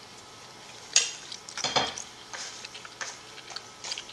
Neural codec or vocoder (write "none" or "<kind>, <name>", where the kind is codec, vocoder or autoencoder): vocoder, BigVGAN v2